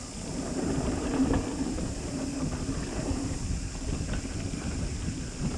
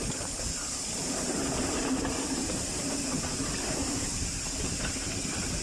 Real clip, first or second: first